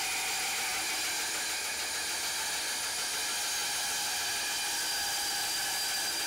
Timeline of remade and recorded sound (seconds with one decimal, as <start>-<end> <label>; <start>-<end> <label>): 0.0-6.3 recorded